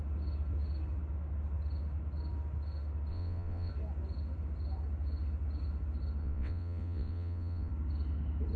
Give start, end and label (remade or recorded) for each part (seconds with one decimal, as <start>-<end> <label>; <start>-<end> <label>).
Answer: 0.0-3.1 recorded; 3.1-3.7 remade; 3.7-6.2 recorded; 6.2-7.7 remade; 7.7-8.6 recorded